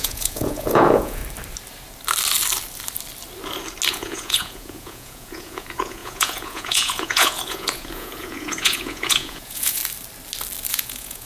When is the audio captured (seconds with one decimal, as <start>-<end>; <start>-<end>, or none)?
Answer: 1.2-3.9; 9.8-10.7

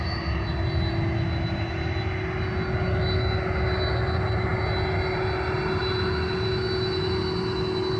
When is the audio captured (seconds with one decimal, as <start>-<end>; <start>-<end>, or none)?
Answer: 0.0-8.0